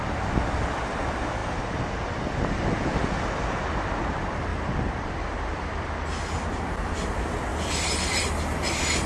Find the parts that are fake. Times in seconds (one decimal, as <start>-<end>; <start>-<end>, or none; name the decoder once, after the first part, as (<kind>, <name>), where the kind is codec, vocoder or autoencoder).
4.5-6.3 (vocoder, BigVGAN v2); 7.5-8.3